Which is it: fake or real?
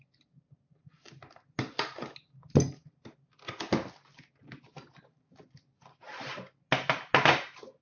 real